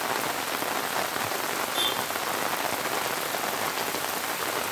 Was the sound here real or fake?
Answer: real